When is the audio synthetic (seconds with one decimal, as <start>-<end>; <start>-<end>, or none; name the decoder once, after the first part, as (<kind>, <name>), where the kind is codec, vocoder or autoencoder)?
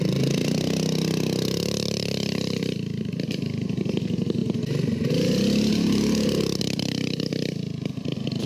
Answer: none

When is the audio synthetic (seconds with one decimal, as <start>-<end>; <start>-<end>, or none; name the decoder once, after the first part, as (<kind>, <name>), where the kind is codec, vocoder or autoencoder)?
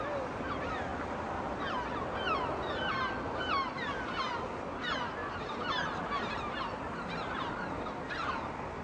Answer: 5.2-7.5 (vocoder, BigVGAN v2)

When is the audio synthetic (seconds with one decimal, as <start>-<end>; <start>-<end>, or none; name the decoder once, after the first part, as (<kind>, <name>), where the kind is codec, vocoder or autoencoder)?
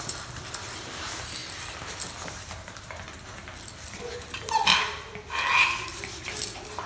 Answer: none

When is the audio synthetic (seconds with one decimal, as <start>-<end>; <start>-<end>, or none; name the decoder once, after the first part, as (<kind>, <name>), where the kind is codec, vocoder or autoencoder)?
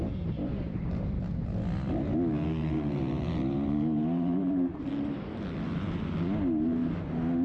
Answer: 0.4-1.1 (vocoder, BigVGAN v2); 2.6-4.9